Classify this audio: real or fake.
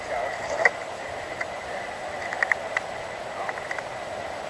real